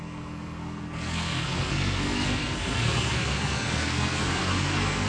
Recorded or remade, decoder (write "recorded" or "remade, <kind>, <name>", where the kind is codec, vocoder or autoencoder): remade, codec, SNAC